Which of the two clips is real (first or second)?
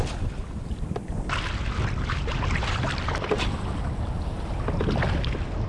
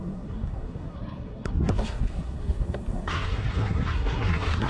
first